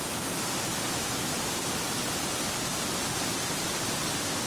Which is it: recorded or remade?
recorded